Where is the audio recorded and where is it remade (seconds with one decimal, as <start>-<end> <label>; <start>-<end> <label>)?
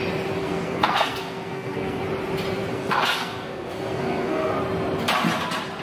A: 0.0-0.4 recorded; 0.4-2.0 remade; 2.0-2.7 recorded; 2.7-4.5 remade; 4.5-5.8 recorded